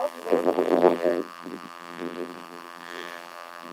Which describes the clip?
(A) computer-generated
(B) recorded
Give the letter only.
A